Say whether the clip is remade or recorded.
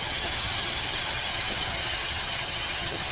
remade